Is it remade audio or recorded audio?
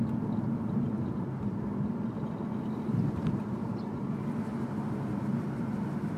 recorded